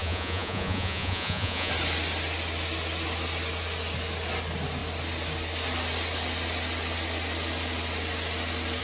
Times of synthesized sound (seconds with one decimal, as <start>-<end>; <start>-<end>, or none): 0.0-1.7